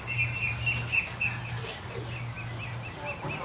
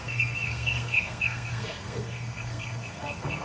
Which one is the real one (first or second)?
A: first